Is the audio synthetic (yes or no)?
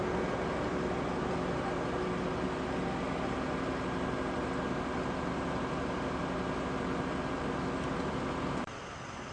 no